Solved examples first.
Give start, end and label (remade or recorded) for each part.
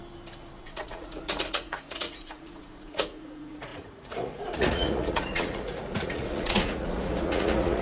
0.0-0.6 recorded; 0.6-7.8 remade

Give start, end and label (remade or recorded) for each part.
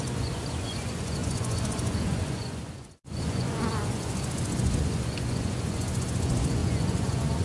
0.0-7.4 remade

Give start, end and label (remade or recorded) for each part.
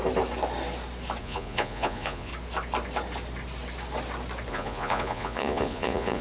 0.0-1.2 recorded; 1.2-2.3 remade; 2.3-4.5 recorded; 4.5-6.2 remade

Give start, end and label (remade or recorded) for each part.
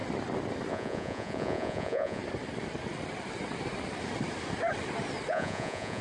0.0-0.7 recorded; 0.7-2.2 remade; 2.2-5.3 recorded; 5.3-6.0 remade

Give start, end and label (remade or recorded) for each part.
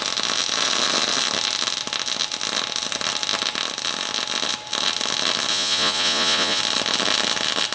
0.0-5.5 recorded; 5.5-6.6 remade; 6.6-7.7 recorded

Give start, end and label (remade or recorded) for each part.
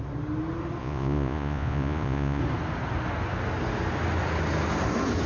0.0-0.8 recorded; 0.8-2.4 remade; 2.4-5.3 recorded